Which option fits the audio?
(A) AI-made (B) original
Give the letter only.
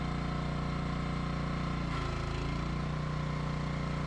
B